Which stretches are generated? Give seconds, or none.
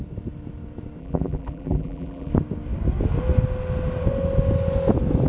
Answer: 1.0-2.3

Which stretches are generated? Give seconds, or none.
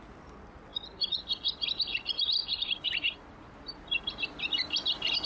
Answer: none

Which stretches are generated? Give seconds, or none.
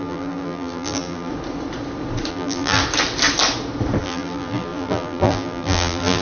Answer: 0.0-1.3; 2.3-2.8; 4.0-6.2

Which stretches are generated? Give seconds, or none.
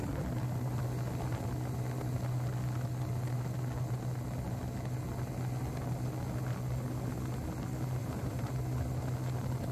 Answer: 8.0-8.5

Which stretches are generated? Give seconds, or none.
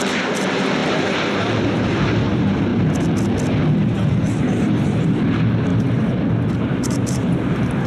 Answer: 0.0-2.7; 4.4-5.7; 6.5-7.9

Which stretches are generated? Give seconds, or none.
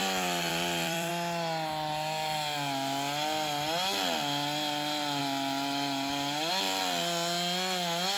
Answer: 0.0-1.1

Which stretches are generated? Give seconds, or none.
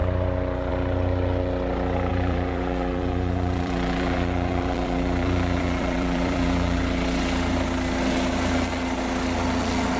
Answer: 2.1-6.8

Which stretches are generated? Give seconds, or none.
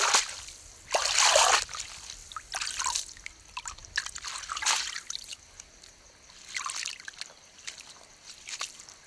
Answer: none